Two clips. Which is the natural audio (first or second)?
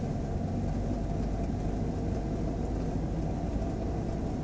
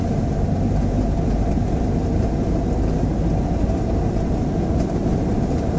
first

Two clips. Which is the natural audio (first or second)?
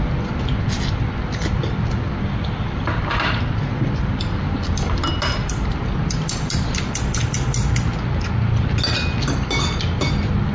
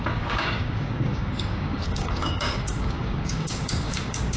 first